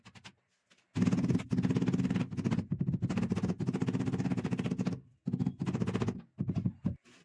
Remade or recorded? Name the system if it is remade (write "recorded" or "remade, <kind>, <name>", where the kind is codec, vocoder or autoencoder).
recorded